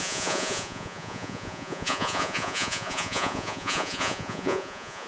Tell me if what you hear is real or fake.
fake